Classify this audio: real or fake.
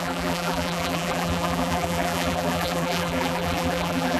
fake